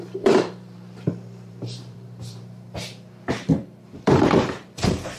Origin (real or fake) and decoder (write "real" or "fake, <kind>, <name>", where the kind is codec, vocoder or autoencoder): fake, vocoder, BigVGAN v2